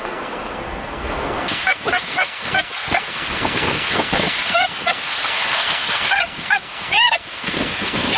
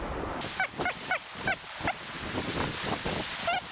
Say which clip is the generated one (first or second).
first